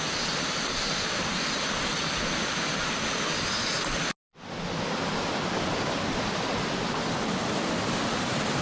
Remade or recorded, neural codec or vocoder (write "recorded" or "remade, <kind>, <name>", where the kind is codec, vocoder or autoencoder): recorded